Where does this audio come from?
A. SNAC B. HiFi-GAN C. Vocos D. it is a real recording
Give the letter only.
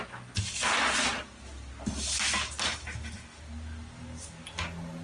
D